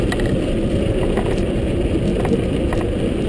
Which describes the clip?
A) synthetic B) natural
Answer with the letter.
B